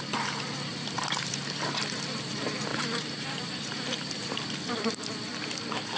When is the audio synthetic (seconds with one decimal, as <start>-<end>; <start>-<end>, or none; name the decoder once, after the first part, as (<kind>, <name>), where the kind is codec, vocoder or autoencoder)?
0.7-1.5 (vocoder, BigVGAN v2); 2.7-4.9